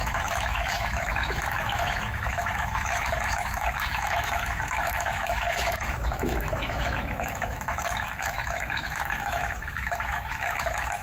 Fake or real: fake